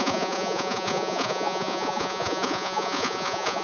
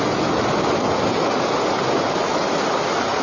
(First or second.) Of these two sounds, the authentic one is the second